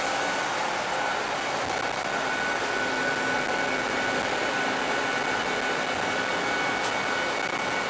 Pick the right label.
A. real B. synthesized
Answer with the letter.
A